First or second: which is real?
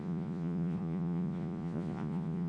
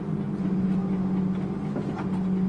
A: second